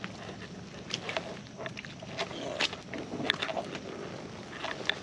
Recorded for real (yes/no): yes